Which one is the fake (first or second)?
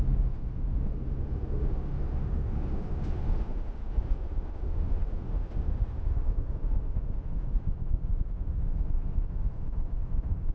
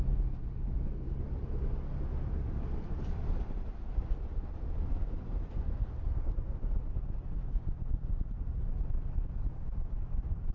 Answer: first